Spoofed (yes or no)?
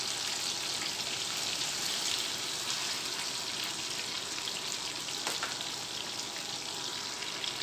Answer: no